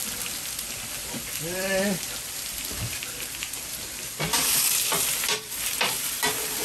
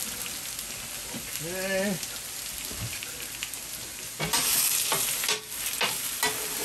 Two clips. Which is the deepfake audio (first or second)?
first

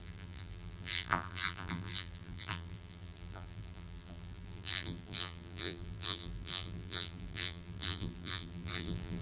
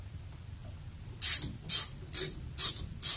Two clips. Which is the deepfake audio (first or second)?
first